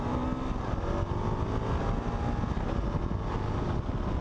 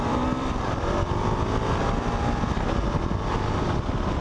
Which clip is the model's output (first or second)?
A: second